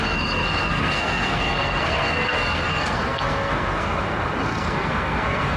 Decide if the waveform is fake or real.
fake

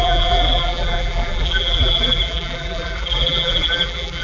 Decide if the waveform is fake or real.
fake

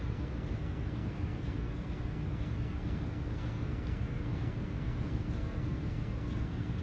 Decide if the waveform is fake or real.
fake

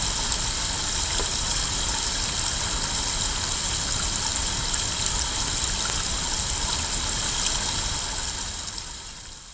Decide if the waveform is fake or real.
real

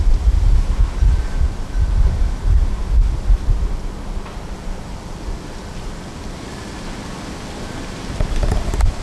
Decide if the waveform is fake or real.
fake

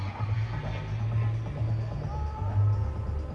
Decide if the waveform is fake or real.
real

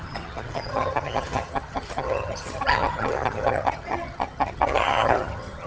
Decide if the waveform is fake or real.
fake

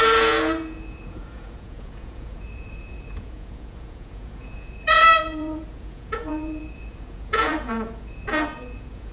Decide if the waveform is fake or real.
fake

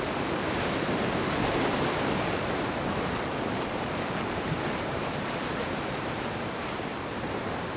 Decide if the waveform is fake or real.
fake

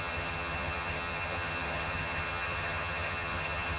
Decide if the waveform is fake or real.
fake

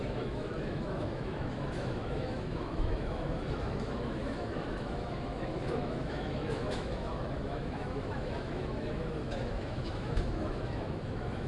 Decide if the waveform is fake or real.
fake